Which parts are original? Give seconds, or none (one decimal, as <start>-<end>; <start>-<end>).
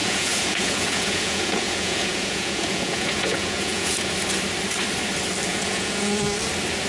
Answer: 4.1-5.5; 6.2-6.9